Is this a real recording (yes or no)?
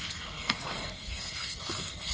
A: no